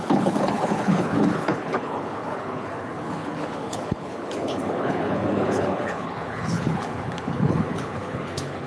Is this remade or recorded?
remade